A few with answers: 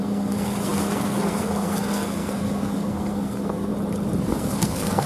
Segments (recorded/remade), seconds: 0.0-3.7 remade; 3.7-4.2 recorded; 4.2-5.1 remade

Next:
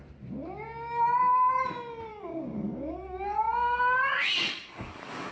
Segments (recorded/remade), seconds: 0.0-2.1 recorded; 2.1-5.3 remade

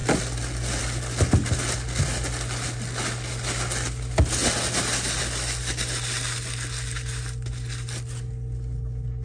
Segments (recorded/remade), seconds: 0.0-9.2 recorded

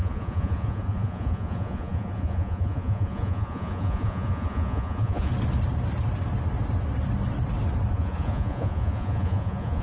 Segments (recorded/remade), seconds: 0.0-5.3 remade; 5.3-7.9 recorded; 7.9-9.8 remade

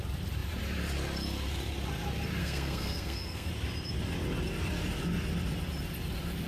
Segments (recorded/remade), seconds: 0.0-2.4 recorded; 2.4-3.5 remade; 3.5-6.5 recorded

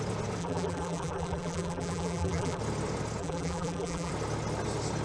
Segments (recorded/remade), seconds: 0.0-0.4 recorded; 0.4-2.6 remade; 2.6-3.2 recorded; 3.2-4.1 remade; 4.1-5.0 recorded

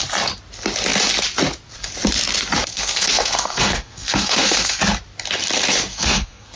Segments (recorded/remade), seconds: 0.0-2.7 recorded; 2.7-4.8 remade; 4.8-5.9 recorded; 5.9-6.6 remade

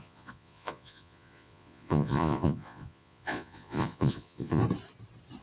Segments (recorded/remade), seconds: 0.0-4.6 remade; 4.6-5.4 recorded